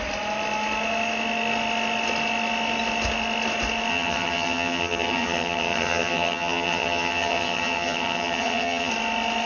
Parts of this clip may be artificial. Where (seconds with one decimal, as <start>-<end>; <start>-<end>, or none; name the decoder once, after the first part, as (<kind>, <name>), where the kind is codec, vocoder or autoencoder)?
3.9-8.9 (vocoder, HiFi-GAN)